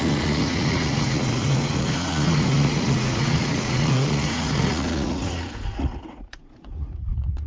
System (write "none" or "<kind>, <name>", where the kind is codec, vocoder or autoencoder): vocoder, Vocos